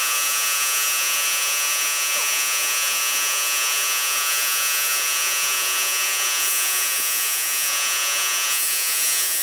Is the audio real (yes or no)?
no